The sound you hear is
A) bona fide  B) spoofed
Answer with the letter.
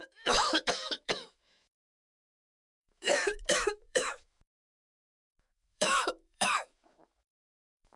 B